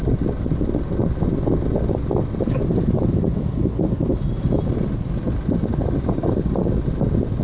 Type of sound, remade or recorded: recorded